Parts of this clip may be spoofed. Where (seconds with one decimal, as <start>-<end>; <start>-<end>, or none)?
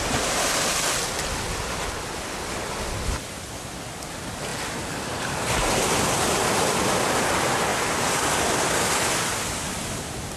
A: 4.5-6.5; 7.7-8.4